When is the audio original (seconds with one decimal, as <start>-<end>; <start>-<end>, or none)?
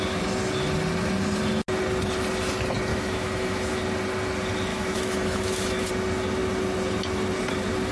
0.0-2.9; 3.8-4.7; 5.9-7.9